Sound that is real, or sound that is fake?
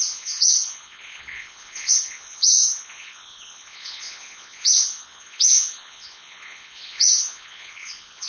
fake